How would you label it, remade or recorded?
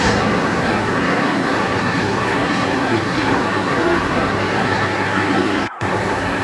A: remade